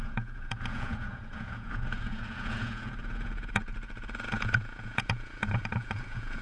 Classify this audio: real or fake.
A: fake